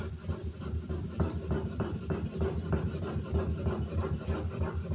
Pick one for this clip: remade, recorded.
recorded